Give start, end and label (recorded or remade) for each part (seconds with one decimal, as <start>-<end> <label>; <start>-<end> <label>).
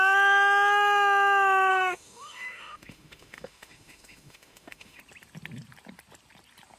0.0-1.7 recorded; 1.7-5.0 remade; 5.0-6.8 recorded